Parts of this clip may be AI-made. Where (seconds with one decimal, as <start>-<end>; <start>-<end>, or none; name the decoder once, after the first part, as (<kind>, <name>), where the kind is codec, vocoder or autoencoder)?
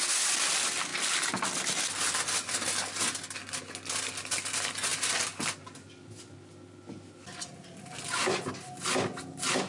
none